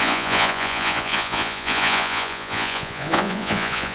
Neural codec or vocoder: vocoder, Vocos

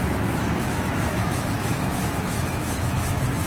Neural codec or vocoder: autoencoder, DAC-VAE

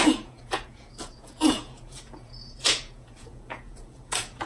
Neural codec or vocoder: vocoder, Vocos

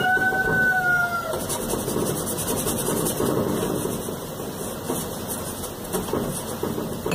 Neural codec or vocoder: none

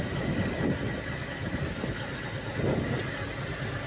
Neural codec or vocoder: none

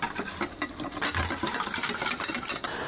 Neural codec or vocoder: none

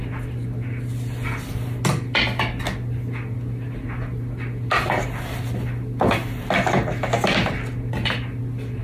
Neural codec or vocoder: none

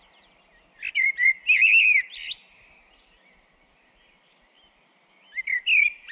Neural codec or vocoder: none